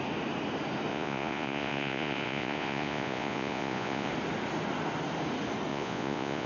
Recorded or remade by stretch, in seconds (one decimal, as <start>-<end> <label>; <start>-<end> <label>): 0.0-0.9 recorded; 0.9-4.1 remade; 4.1-5.7 recorded; 5.7-6.5 remade

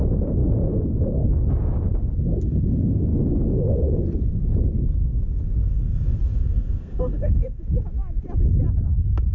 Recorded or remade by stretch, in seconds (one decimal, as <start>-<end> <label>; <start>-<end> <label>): 0.0-5.7 recorded; 5.7-7.6 remade; 7.6-9.3 recorded

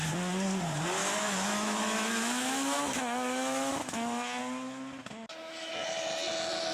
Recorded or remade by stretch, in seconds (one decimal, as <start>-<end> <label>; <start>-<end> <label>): 0.0-1.0 recorded; 1.0-4.4 remade; 4.4-5.0 recorded; 5.0-5.7 remade; 5.7-6.7 recorded

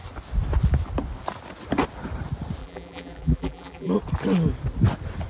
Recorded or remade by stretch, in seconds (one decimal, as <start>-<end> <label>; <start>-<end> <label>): 0.0-2.6 recorded; 2.6-3.9 remade; 3.9-5.3 recorded

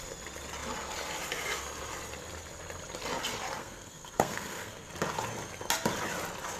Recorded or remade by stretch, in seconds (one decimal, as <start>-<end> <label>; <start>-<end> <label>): 0.0-3.6 recorded; 3.6-4.9 remade; 4.9-6.6 recorded

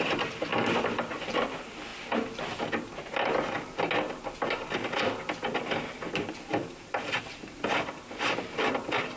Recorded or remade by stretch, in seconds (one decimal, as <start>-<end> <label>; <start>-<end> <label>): 0.0-0.5 remade; 0.5-1.0 recorded; 1.0-1.9 remade; 1.9-7.0 recorded; 7.0-9.2 remade